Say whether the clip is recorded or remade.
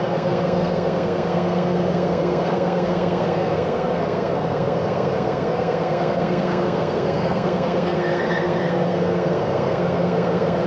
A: remade